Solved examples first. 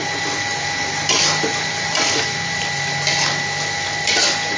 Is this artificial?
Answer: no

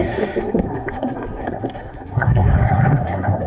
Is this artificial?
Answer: yes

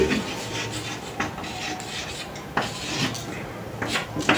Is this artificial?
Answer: no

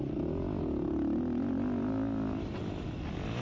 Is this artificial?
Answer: no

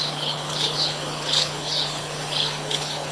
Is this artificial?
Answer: yes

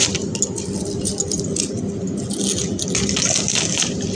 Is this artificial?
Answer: no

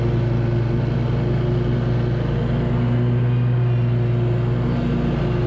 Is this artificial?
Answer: no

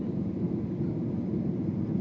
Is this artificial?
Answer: no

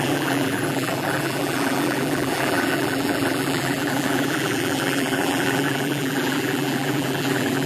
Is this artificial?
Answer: yes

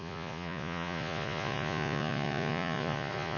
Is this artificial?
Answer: yes